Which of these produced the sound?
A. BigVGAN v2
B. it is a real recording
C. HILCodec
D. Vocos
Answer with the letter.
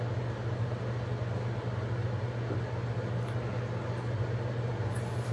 B